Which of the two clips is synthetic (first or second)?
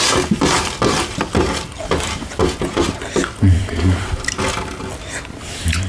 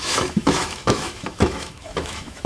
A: second